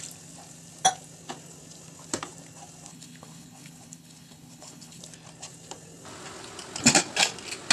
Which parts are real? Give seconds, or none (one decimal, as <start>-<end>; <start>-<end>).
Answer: 0.0-2.9; 5.0-7.7